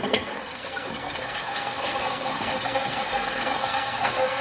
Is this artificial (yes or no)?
yes